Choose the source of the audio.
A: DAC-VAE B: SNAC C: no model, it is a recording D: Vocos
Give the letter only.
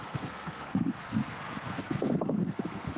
B